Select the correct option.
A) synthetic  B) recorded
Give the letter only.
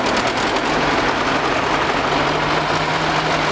B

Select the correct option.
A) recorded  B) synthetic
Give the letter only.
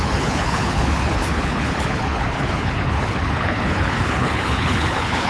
B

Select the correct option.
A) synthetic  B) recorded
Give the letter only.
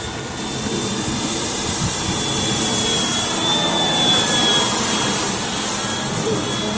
B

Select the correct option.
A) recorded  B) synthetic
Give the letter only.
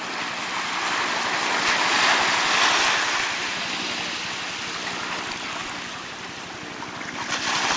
A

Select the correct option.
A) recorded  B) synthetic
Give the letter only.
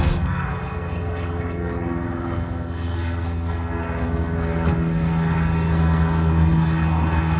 B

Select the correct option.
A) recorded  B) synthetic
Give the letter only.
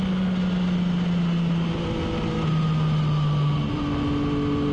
A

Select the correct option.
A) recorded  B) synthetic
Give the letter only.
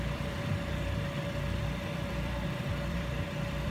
B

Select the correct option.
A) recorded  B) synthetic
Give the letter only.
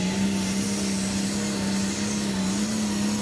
A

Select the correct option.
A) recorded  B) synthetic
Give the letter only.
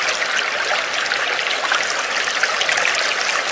A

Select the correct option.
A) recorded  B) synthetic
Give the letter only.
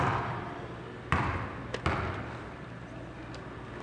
A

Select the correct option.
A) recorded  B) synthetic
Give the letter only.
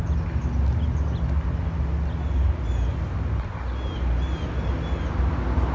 A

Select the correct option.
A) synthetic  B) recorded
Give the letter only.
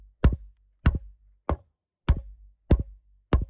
B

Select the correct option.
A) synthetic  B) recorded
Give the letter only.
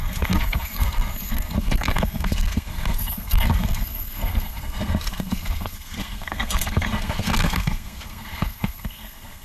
A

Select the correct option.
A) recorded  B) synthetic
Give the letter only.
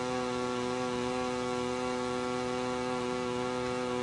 A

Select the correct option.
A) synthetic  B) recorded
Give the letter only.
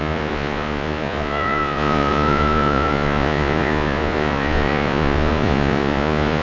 A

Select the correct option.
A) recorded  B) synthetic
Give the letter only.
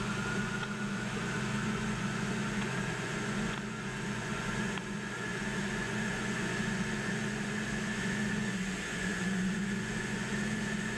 B